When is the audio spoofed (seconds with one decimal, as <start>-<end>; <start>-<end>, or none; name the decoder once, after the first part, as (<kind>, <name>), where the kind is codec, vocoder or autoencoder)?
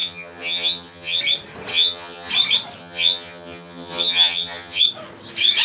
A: 0.0-1.2 (vocoder, HiFi-GAN); 1.7-2.3; 2.8-4.8